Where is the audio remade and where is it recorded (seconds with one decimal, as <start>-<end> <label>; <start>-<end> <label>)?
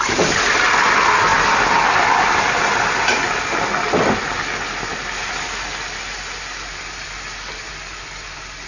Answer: 0.0-8.7 recorded